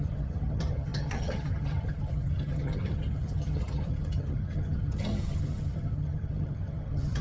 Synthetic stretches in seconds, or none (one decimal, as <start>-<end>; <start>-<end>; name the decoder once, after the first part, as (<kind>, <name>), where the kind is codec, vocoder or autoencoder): 0.0-7.2 (vocoder, HiFi-GAN)